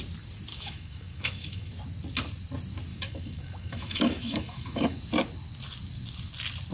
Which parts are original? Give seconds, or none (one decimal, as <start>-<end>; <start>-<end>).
0.0-0.5; 1.7-2.9; 5.0-6.7